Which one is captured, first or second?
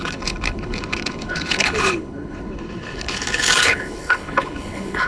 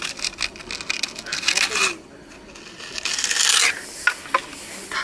second